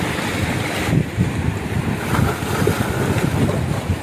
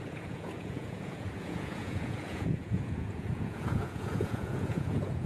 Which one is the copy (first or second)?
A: second